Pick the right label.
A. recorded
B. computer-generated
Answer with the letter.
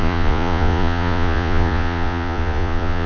B